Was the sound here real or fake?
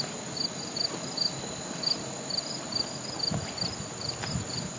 real